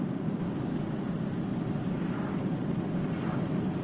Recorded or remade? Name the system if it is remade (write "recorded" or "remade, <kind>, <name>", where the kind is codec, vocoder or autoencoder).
recorded